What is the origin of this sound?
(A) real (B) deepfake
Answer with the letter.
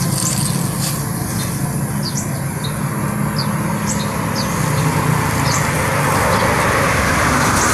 A